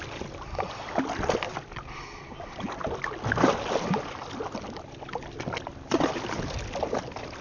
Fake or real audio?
real